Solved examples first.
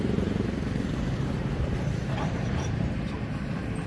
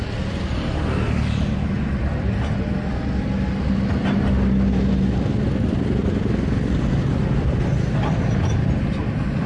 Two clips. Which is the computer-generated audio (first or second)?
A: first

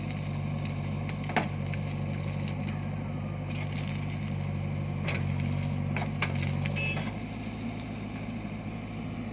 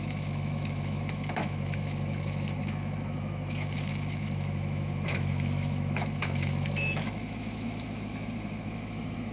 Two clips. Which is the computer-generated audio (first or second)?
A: second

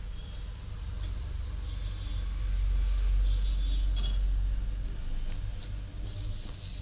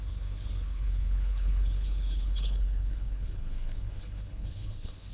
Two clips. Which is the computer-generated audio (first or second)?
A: second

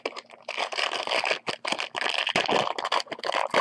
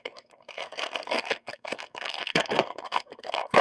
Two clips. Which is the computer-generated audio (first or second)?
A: second